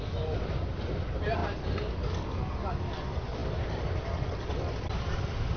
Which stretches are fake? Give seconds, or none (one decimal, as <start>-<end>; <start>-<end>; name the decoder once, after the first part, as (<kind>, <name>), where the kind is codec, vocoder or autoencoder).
none